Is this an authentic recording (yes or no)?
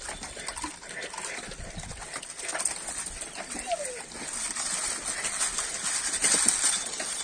yes